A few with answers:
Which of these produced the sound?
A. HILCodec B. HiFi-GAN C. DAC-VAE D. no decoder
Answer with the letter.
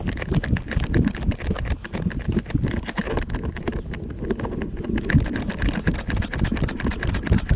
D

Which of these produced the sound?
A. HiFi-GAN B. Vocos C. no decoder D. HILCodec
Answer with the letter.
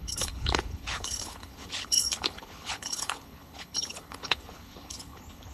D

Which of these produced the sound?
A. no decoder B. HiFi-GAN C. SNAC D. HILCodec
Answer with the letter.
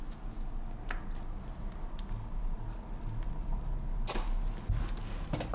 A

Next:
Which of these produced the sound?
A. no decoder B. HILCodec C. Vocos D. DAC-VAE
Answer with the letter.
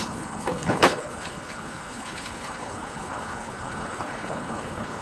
B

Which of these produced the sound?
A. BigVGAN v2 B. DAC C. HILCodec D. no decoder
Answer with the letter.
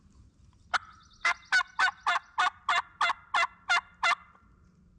D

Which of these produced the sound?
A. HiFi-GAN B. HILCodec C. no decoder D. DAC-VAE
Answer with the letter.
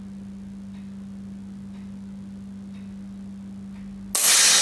C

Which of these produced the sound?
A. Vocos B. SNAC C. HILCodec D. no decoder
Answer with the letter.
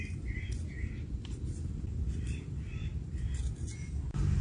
D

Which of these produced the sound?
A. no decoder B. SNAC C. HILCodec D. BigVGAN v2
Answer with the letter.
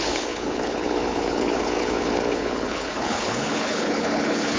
C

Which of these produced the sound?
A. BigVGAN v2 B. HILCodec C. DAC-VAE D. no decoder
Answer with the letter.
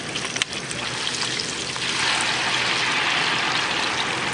D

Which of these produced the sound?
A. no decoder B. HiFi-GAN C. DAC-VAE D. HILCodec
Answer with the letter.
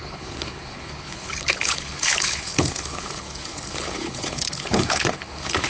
D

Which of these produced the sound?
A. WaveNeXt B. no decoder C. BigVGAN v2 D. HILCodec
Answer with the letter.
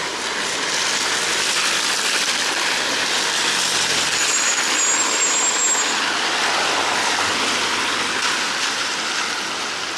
B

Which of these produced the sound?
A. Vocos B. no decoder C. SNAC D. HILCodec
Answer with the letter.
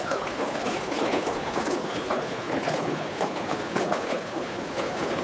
D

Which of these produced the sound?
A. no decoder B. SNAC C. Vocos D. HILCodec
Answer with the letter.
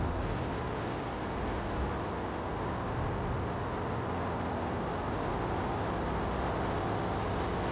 A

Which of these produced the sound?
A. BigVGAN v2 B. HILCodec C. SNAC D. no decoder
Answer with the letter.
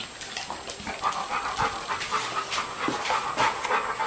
D